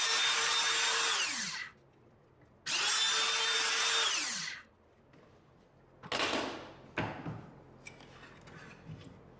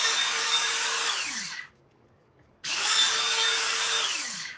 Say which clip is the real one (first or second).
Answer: first